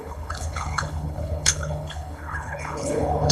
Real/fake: fake